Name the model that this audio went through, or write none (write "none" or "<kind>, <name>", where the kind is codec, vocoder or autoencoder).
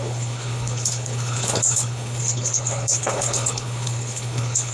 codec, HILCodec